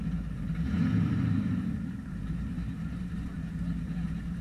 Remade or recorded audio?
remade